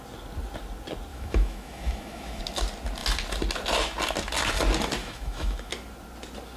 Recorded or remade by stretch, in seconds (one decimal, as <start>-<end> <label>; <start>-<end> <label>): 0.0-1.1 recorded; 1.1-2.4 remade; 2.4-5.0 recorded; 5.0-5.7 remade; 5.7-6.6 recorded